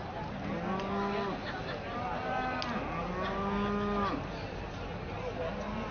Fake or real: real